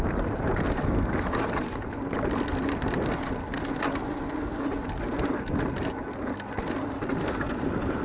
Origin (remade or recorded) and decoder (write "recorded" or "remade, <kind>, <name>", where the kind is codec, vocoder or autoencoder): recorded